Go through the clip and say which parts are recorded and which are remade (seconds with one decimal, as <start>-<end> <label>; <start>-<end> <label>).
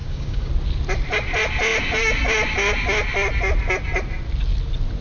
0.0-0.5 remade; 0.5-5.0 recorded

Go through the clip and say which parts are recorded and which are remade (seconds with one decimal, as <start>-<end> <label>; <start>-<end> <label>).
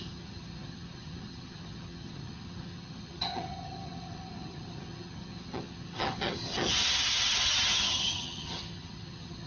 0.0-9.5 remade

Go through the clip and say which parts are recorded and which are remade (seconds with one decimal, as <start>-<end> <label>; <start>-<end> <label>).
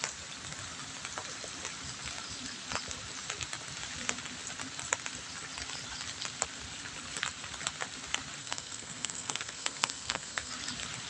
0.0-8.4 recorded; 8.4-10.5 remade; 10.5-11.1 recorded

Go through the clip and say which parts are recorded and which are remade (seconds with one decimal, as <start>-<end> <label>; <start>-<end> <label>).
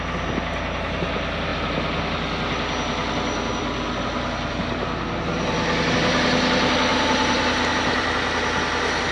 0.0-6.9 recorded; 6.9-7.4 remade; 7.4-9.1 recorded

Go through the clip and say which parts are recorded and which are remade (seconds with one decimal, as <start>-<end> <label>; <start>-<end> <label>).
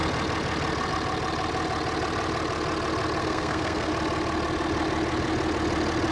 0.0-3.2 recorded; 3.2-3.9 remade; 3.9-6.1 recorded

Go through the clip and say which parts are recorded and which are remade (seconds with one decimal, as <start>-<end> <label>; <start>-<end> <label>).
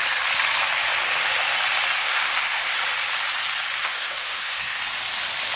0.0-2.0 recorded; 2.0-2.7 remade; 2.7-3.8 recorded; 3.8-4.8 remade; 4.8-5.6 recorded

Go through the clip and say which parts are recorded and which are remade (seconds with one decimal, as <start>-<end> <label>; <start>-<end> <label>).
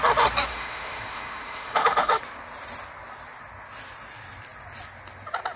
0.0-0.5 recorded; 0.5-2.2 remade; 2.2-5.6 recorded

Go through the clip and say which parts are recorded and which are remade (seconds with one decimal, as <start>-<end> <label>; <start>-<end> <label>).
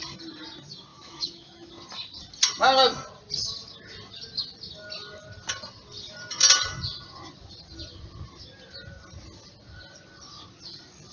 0.0-0.9 recorded; 0.9-1.7 remade; 1.7-11.1 recorded